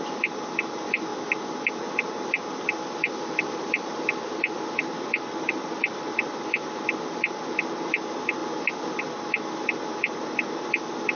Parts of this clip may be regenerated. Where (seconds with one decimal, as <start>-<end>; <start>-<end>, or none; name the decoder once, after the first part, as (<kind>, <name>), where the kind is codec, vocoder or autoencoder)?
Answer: 0.0-1.1 (vocoder, BigVGAN v2); 1.7-8.4; 9.0-11.2